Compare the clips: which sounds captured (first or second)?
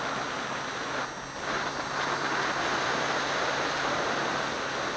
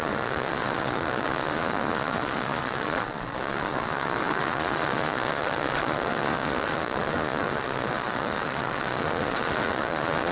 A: first